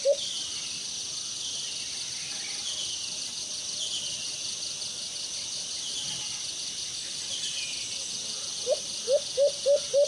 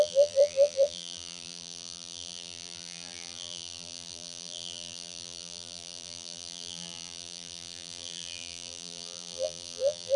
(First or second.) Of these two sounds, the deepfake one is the second